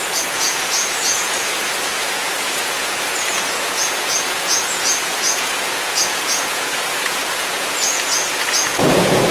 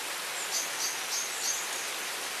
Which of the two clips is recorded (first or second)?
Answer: second